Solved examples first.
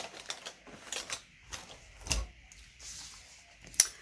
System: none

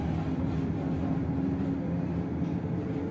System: none